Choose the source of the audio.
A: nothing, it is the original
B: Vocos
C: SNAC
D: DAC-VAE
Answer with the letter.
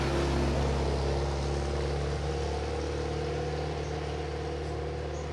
A